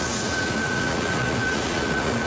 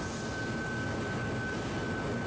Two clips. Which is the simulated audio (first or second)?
first